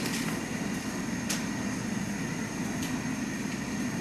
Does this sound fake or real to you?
fake